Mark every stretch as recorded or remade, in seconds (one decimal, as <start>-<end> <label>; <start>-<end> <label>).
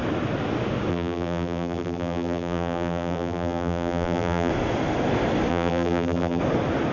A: 0.0-0.9 recorded; 0.9-4.5 remade; 4.5-5.5 recorded; 5.5-6.4 remade; 6.4-6.9 recorded